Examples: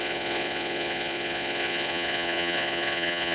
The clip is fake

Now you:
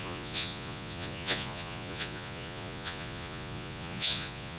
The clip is fake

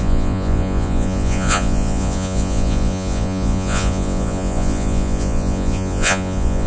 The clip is fake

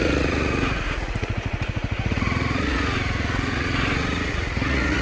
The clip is fake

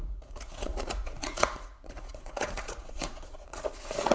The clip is fake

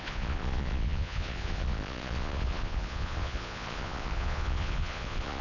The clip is fake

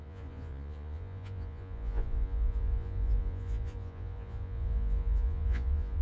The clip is fake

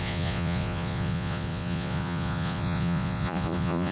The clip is fake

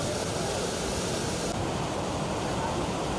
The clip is real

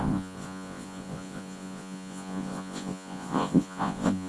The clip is fake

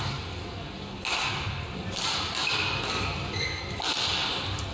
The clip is real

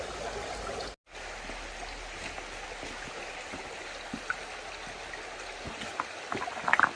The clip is real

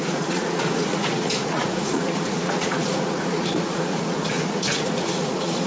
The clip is fake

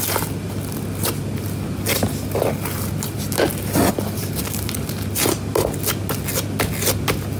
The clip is real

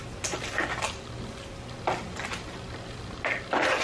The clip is real